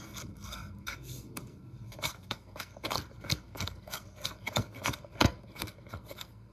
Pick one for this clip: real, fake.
fake